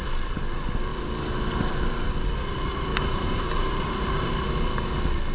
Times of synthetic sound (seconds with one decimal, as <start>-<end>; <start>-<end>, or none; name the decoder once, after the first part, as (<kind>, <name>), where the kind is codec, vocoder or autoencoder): 2.9-4.3 (vocoder, BigVGAN v2)